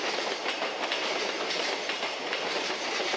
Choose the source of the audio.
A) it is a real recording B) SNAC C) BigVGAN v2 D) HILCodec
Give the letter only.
A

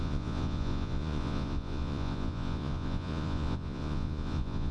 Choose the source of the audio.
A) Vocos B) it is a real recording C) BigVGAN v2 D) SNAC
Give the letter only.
A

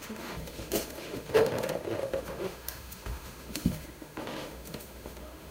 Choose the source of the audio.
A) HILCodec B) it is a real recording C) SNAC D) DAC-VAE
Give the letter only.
D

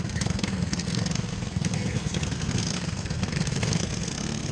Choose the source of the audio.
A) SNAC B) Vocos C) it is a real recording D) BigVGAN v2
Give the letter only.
A